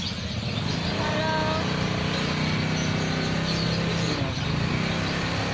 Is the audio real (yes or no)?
yes